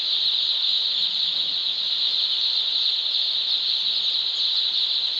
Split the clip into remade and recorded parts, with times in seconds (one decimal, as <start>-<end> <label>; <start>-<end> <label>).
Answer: 0.0-5.2 recorded